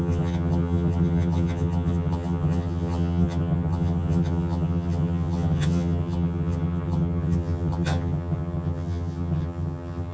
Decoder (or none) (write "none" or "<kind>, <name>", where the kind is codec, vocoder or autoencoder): vocoder, HiFi-GAN